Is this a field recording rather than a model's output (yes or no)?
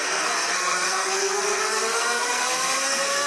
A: no